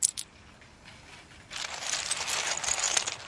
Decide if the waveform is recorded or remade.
recorded